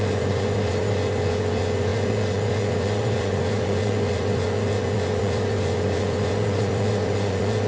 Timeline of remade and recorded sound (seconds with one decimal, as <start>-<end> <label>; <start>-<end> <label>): 0.0-7.7 remade